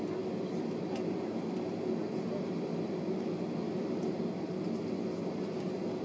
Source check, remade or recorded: recorded